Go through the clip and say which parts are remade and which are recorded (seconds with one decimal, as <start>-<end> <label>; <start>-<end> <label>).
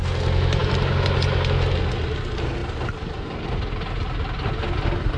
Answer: 0.0-5.2 recorded